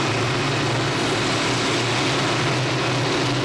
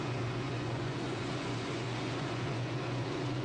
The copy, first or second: second